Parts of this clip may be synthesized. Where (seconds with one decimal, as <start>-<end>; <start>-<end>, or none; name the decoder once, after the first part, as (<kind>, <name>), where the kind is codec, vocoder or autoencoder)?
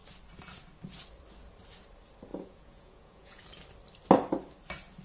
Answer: 2.3-3.4 (vocoder, Vocos)